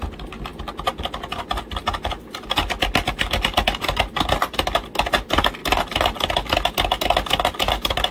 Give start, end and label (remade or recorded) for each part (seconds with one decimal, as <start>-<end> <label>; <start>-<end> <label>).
0.0-8.1 recorded